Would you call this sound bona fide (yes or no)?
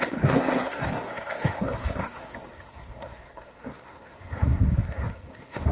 no